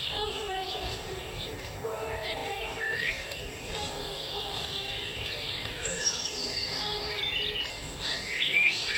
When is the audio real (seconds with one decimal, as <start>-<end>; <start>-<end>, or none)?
7.2-7.7